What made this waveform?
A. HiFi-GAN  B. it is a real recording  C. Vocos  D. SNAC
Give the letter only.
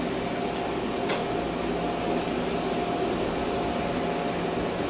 B